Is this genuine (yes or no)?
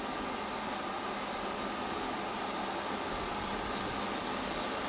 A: yes